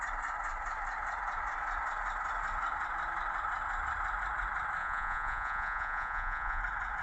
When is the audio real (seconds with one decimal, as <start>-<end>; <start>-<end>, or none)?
0.0-4.8; 6.6-7.0